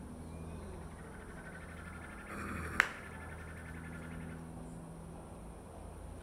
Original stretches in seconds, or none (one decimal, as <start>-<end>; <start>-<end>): 0.0-2.3; 2.8-6.2